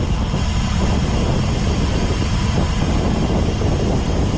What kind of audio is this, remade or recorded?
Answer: recorded